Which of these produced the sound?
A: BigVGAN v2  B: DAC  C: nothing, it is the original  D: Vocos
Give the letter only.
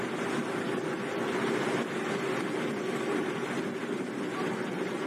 C